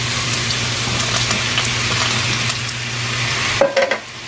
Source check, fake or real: real